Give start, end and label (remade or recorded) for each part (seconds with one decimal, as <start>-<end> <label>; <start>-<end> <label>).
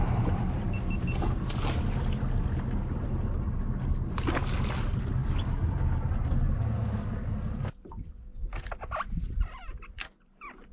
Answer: 0.0-8.3 recorded; 8.3-10.7 remade